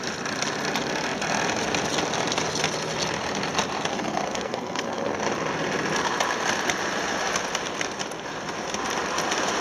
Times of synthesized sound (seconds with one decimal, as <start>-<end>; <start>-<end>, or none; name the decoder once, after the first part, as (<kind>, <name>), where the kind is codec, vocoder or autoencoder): 3.9-5.2 (codec, SNAC)